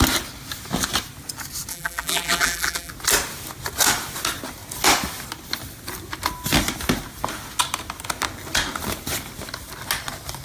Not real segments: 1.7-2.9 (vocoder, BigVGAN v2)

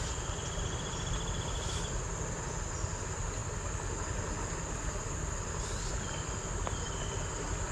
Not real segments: none